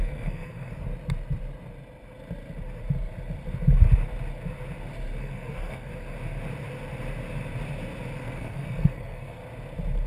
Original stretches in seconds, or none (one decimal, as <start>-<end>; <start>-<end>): 0.7-5.2; 5.9-8.2; 9.4-10.1